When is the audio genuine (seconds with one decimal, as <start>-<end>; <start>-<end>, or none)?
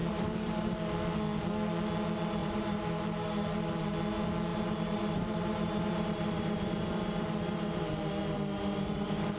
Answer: 0.7-2.4; 4.0-4.5